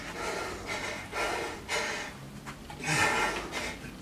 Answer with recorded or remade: recorded